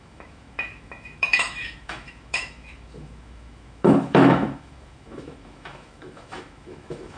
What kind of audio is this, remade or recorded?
remade